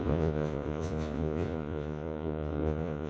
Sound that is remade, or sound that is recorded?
remade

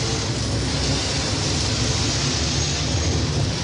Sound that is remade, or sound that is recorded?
recorded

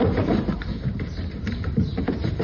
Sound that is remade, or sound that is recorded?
remade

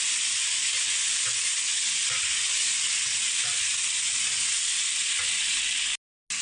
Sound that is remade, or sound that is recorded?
recorded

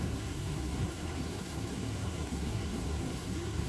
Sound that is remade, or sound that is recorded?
remade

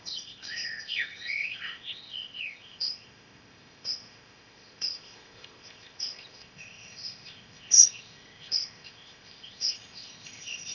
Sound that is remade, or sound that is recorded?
remade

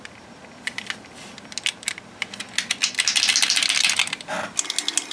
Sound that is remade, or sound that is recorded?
recorded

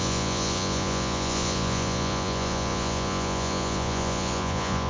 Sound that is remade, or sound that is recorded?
remade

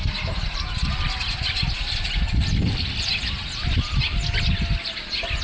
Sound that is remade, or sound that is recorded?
recorded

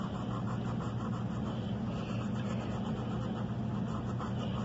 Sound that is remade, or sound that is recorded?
recorded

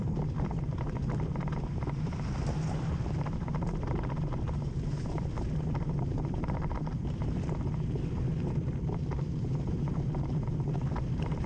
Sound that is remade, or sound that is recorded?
remade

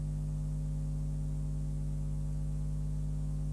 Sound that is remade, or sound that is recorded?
recorded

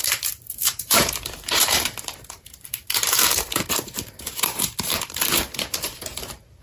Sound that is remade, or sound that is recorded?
remade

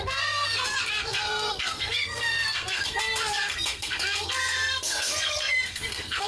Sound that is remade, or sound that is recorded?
remade